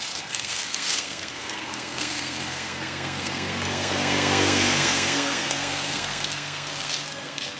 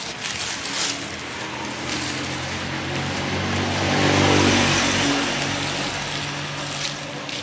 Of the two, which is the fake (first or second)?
first